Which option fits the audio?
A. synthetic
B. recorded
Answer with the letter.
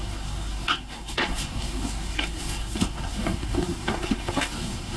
A